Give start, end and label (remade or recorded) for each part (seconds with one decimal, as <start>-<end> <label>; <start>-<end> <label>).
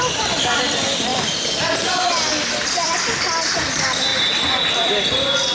0.0-5.5 recorded